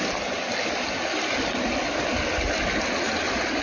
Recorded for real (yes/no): yes